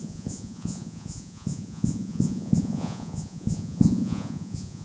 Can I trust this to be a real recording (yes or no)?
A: no